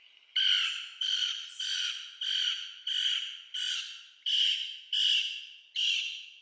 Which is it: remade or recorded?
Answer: recorded